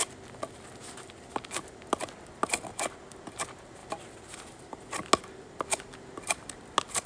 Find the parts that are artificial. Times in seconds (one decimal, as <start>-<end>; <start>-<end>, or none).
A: none